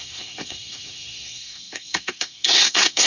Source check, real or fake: fake